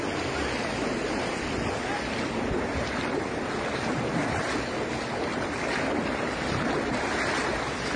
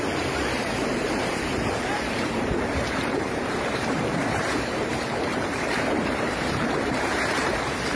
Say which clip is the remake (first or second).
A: second